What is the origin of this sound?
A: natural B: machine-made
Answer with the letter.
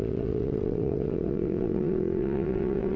B